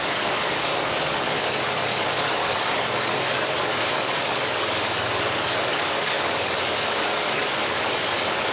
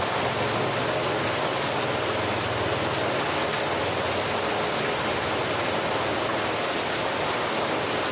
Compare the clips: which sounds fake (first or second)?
first